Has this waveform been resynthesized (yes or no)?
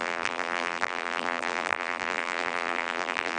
yes